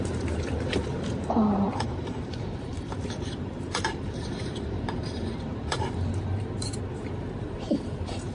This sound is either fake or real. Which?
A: fake